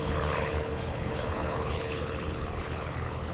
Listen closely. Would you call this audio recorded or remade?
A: remade